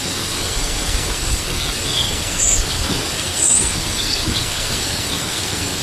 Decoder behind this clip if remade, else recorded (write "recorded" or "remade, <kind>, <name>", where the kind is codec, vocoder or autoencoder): remade, codec, SNAC